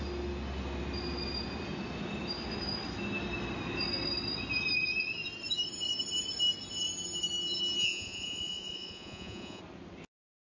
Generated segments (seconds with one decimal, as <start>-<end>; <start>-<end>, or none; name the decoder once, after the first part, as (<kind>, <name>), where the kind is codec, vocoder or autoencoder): 7.8-9.6 (vocoder, Vocos)